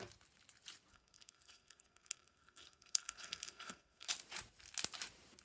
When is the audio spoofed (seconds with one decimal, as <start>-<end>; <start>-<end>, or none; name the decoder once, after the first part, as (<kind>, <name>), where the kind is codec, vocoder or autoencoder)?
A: 0.9-4.1 (codec, SNAC)